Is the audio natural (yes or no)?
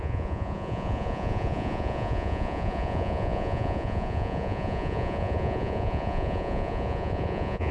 no